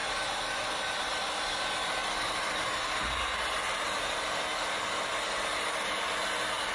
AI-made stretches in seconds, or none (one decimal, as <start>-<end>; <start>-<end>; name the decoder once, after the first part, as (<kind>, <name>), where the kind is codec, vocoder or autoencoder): none